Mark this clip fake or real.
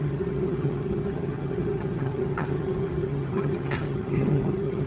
fake